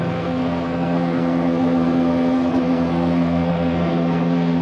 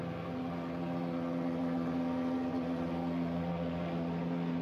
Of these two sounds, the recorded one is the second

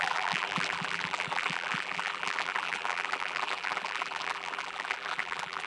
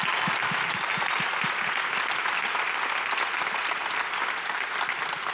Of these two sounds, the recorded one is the second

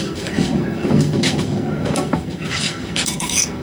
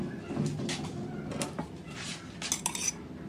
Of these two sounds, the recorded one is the second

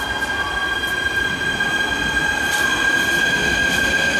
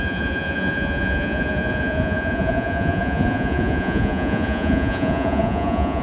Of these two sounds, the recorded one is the first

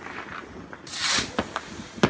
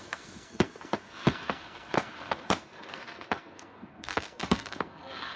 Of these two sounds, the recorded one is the first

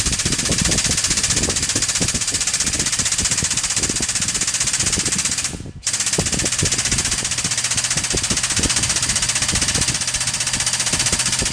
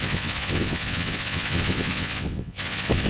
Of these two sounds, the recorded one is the first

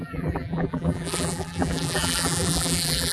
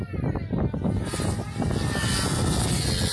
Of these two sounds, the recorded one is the second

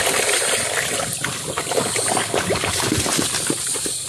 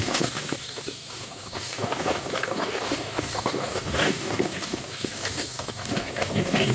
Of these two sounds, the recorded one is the first